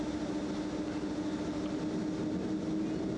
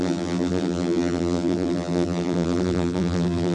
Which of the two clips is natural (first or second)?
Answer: first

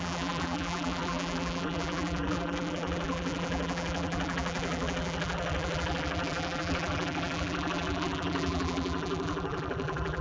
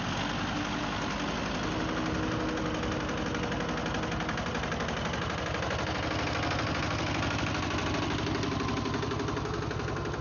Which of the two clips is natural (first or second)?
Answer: second